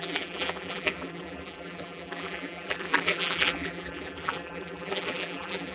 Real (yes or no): no